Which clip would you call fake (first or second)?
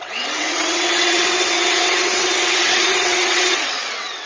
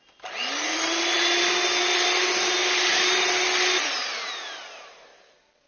first